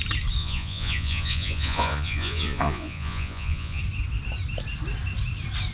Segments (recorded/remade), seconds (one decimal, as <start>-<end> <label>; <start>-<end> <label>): 0.0-0.4 recorded; 0.4-3.8 remade; 3.8-5.7 recorded